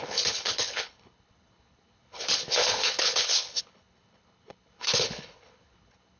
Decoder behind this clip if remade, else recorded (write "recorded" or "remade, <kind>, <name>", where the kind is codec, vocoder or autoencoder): remade, codec, HILCodec